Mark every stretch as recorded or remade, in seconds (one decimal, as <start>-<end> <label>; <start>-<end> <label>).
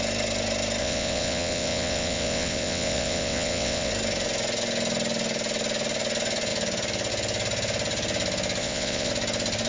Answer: 0.0-0.8 recorded; 0.8-3.9 remade; 3.9-8.6 recorded; 8.6-9.1 remade; 9.1-9.7 recorded